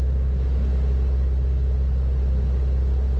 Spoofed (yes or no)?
no